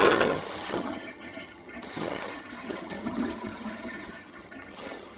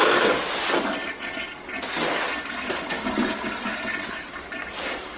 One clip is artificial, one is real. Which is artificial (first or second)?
first